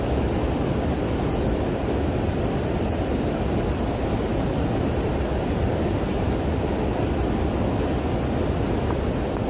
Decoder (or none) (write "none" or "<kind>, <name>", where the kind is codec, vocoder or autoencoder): none